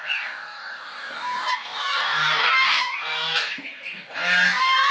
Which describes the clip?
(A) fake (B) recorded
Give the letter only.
A